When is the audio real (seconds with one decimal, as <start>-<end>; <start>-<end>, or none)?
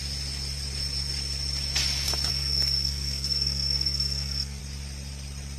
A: 0.0-2.3; 4.6-5.6